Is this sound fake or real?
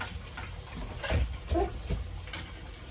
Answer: real